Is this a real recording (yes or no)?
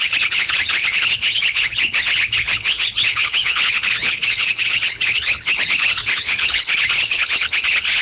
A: no